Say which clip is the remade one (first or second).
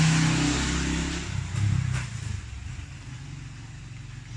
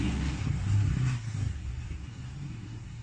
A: second